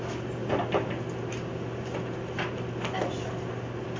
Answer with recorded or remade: recorded